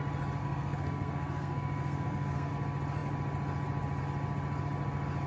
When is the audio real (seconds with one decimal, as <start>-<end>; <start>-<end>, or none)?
0.0-0.4; 2.5-5.3